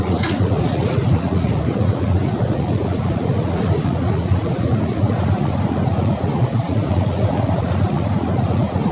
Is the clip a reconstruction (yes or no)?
yes